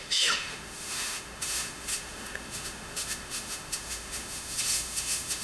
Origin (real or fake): fake